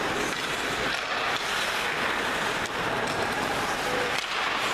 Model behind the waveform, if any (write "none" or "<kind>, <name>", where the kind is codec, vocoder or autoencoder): none